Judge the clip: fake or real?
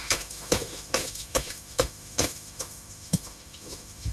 fake